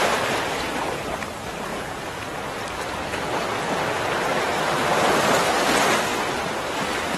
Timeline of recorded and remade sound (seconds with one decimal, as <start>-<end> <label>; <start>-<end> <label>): 0.0-7.2 recorded